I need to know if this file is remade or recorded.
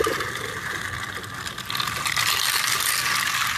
recorded